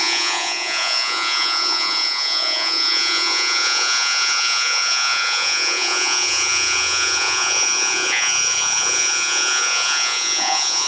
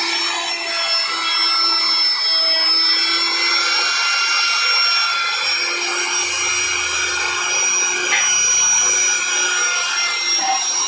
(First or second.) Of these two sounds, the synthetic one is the first